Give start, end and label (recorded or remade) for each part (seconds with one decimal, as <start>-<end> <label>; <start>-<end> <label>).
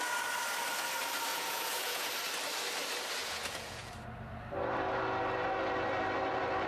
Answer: 0.0-1.3 recorded; 1.3-2.1 remade; 2.1-3.2 recorded; 3.2-3.9 remade; 3.9-6.7 recorded